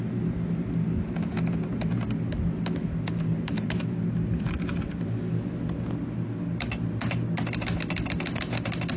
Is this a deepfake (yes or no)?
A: no